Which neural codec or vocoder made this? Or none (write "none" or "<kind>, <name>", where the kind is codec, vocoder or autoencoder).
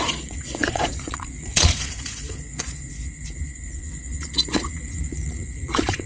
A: vocoder, Vocos